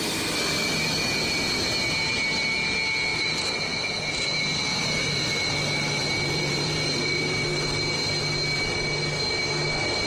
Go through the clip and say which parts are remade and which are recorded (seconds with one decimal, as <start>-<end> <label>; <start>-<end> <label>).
0.0-3.1 recorded; 3.1-4.1 remade; 4.1-4.7 recorded; 4.7-5.2 remade; 5.2-6.0 recorded; 6.0-7.7 remade; 7.7-10.1 recorded